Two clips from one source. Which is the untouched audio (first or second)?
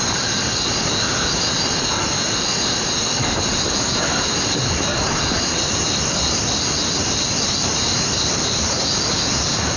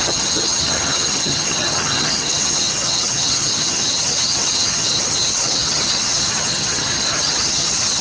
first